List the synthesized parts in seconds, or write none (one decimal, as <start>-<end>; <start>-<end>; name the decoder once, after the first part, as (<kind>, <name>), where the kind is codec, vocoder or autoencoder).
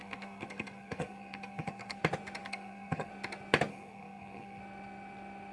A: 0.0-2.0 (codec, SNAC); 2.4-3.1; 3.7-4.6